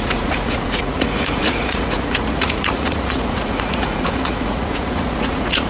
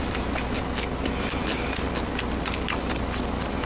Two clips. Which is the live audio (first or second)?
second